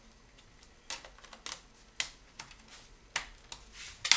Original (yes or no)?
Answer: yes